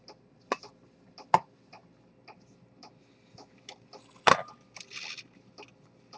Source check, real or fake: real